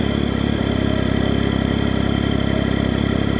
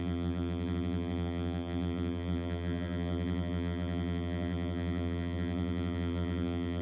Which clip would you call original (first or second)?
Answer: first